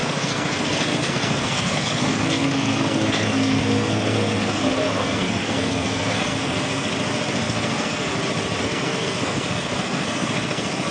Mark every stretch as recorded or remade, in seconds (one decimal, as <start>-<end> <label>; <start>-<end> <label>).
0.0-6.9 remade; 6.9-7.4 recorded; 7.4-8.1 remade; 8.1-8.6 recorded; 8.6-10.9 remade